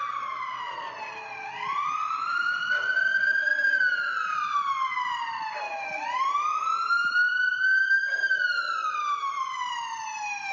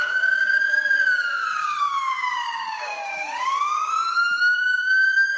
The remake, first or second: second